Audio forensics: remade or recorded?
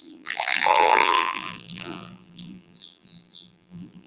remade